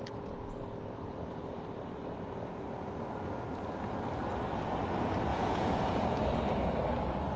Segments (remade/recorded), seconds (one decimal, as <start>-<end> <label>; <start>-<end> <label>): 0.0-5.3 recorded; 5.3-6.2 remade; 6.2-7.4 recorded